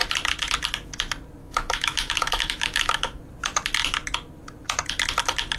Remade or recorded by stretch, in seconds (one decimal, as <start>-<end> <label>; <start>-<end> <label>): 0.0-1.4 recorded; 1.4-3.2 remade; 3.2-5.6 recorded